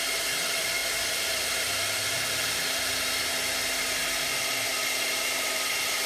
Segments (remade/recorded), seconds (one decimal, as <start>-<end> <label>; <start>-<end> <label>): 0.0-6.1 recorded